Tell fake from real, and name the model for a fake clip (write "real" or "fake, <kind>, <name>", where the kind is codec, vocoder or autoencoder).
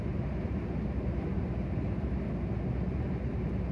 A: real